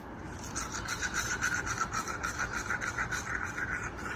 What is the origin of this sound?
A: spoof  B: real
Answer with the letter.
B